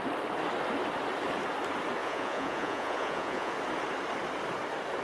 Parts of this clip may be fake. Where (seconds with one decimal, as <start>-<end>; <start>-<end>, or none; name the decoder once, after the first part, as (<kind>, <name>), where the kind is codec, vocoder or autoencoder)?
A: 2.0-3.5 (vocoder, Vocos)